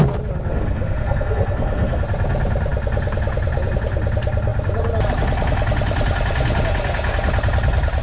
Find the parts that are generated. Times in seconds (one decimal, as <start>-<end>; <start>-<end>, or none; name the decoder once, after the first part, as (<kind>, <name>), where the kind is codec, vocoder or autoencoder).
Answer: 0.5-2.0 (codec, SNAC)